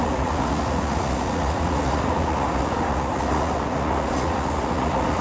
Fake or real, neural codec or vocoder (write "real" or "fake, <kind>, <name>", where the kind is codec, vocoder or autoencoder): fake, vocoder, Vocos